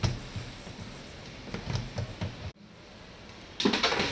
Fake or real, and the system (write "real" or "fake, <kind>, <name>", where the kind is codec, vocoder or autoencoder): real